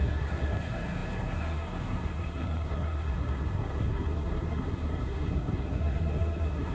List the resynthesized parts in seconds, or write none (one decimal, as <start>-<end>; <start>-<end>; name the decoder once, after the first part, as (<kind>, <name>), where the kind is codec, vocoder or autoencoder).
0.0-6.7 (codec, SNAC)